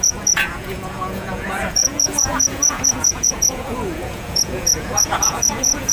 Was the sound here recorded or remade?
remade